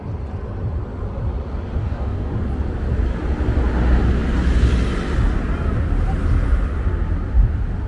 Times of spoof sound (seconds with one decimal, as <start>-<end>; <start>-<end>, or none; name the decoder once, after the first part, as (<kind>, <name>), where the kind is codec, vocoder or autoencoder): 1.8-2.3 (codec, DAC)